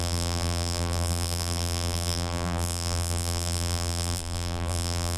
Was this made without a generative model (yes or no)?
no